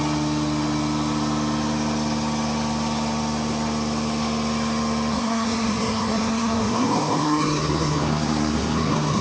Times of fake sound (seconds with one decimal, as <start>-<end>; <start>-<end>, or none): 5.1-9.2